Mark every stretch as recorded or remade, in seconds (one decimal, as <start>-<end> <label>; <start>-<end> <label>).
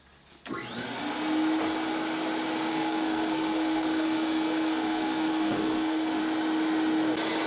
0.0-2.7 recorded; 2.7-6.2 remade; 6.2-7.5 recorded